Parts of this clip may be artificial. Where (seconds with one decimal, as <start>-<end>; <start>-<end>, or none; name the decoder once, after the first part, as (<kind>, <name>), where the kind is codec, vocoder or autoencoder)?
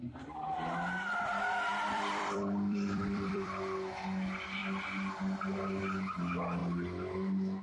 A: 1.7-3.9 (vocoder, BigVGAN v2)